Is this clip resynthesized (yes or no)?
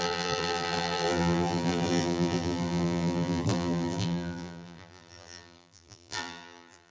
yes